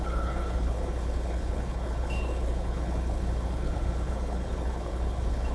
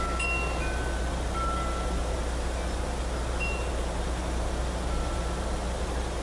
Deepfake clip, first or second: first